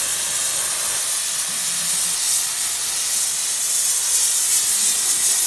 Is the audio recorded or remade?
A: recorded